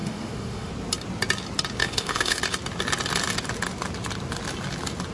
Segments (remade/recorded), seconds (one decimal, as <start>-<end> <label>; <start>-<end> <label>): 0.0-0.7 remade; 0.7-1.8 recorded; 1.8-2.4 remade; 2.4-5.1 recorded